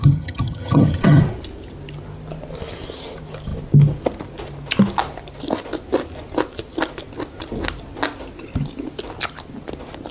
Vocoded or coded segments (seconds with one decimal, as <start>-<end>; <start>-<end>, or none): 0.0-1.2